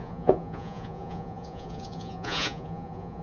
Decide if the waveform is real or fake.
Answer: fake